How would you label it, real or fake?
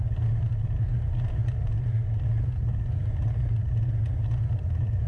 real